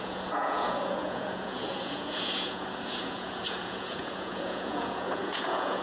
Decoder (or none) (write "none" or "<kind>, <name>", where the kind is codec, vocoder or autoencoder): vocoder, Vocos